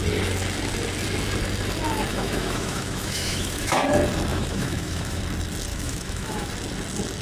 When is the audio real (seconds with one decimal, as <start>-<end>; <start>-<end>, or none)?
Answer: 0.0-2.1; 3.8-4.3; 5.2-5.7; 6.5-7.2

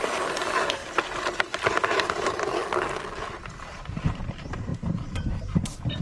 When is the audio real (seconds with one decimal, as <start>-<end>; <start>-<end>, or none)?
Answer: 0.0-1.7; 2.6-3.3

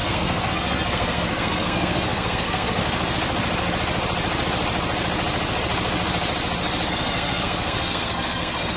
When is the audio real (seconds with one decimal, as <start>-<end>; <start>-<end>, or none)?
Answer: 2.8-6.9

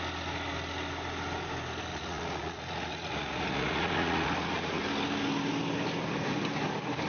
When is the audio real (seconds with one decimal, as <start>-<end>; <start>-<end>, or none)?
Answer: 0.0-1.9; 4.8-7.1

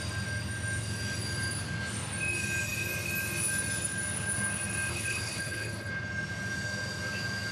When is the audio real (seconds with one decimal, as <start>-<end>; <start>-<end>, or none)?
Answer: 0.0-4.9; 5.9-7.5